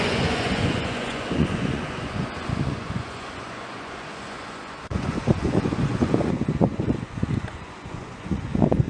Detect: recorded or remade remade